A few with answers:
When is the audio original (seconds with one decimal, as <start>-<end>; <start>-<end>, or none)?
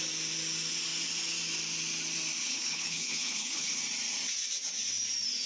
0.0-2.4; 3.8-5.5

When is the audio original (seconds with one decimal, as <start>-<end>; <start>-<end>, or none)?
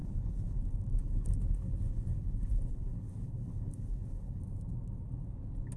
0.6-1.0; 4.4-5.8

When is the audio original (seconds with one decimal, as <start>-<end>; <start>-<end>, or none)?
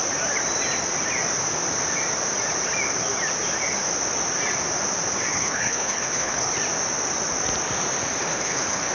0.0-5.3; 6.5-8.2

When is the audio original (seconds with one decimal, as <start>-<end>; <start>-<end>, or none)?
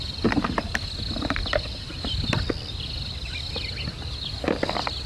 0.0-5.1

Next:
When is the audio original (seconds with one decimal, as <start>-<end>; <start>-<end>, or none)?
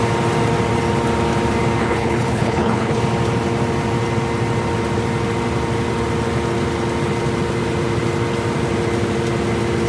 0.0-1.8; 3.0-9.9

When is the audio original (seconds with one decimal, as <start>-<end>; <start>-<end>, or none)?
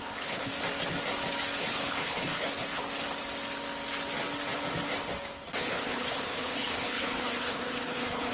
0.5-1.6; 2.8-5.5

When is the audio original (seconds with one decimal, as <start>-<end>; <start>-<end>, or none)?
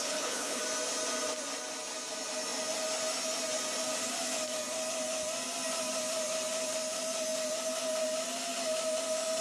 0.6-9.4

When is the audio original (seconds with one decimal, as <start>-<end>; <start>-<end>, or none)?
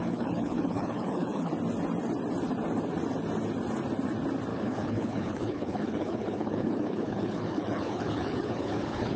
1.5-4.5